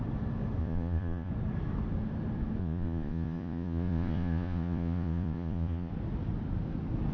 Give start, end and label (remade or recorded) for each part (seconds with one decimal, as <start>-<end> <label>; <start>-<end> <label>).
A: 0.0-0.6 recorded; 0.6-1.3 remade; 1.3-2.6 recorded; 2.6-5.9 remade; 5.9-7.1 recorded

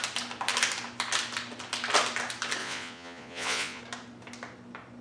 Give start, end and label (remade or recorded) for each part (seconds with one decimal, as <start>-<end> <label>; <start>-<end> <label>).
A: 0.0-2.6 recorded; 2.6-3.8 remade; 3.8-5.0 recorded